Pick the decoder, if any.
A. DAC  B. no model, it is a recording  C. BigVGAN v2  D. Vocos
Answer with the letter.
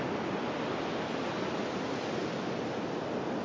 B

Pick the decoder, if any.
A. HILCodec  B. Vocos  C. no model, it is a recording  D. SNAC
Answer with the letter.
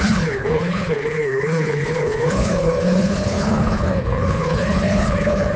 A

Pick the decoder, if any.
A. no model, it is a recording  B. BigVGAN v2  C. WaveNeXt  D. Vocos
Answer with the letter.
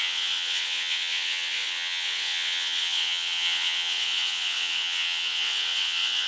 C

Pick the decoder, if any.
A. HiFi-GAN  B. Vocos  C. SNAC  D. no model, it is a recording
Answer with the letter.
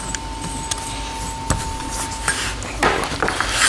D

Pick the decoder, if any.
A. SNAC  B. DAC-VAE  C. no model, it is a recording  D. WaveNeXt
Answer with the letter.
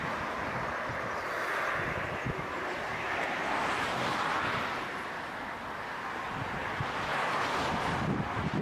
C